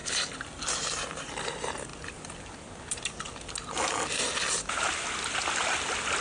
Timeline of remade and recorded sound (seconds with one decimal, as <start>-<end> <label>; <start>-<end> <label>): 0.0-6.2 recorded